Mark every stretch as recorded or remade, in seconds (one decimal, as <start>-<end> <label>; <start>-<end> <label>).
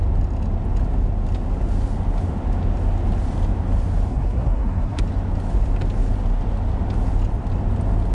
0.0-4.1 recorded; 4.1-5.0 remade; 5.0-8.1 recorded